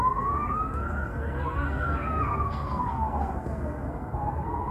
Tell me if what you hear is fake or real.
fake